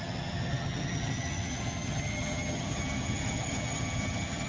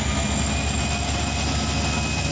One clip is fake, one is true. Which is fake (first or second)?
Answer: first